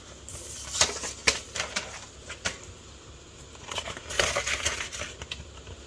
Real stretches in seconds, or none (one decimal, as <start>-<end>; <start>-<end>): 0.0-5.9

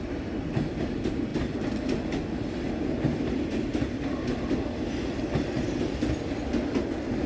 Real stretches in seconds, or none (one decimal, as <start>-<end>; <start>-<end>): 0.0-7.3

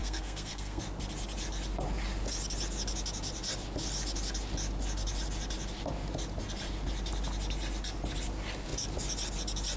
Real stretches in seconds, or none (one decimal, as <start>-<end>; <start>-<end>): 0.8-9.8

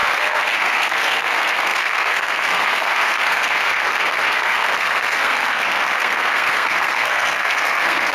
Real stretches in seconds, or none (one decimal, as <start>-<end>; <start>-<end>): none

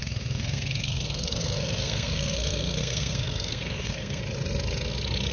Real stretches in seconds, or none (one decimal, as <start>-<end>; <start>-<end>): 4.2-5.3

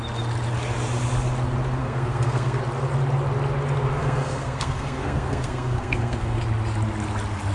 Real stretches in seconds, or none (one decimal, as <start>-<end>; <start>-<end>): 0.0-1.8; 2.6-4.0; 6.4-7.5